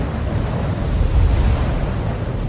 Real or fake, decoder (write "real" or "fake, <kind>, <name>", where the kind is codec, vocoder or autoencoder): real